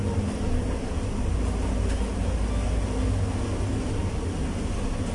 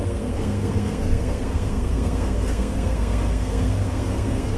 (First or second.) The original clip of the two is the first